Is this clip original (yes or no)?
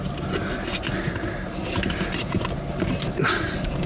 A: yes